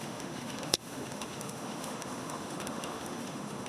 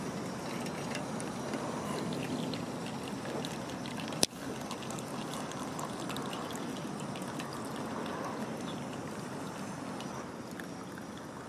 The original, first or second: second